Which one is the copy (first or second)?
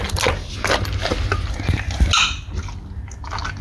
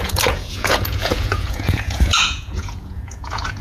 second